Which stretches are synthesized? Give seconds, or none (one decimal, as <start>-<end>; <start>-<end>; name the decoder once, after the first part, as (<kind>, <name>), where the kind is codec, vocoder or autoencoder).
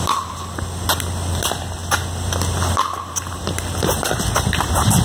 none